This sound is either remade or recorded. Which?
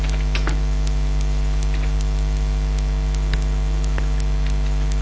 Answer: recorded